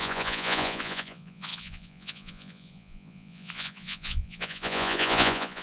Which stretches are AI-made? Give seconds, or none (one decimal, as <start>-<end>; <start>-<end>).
0.0-5.6